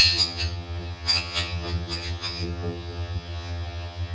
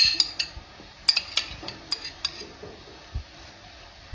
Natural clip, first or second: second